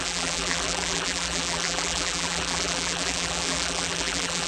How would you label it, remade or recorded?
remade